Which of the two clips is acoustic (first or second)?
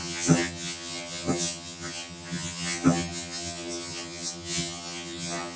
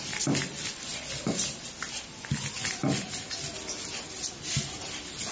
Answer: second